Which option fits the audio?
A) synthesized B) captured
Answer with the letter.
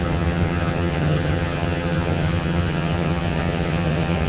A